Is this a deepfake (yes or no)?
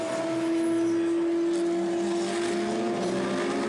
no